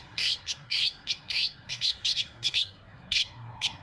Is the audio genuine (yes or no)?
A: no